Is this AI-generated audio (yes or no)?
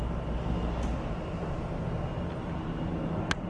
no